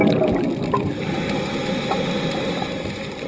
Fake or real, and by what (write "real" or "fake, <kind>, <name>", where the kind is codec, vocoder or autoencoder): real